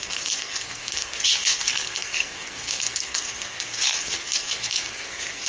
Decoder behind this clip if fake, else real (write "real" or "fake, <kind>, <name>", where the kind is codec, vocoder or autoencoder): fake, codec, SNAC